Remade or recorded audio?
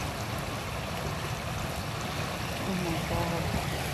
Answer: recorded